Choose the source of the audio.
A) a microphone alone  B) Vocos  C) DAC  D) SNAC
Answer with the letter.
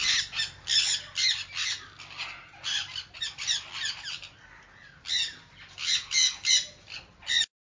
A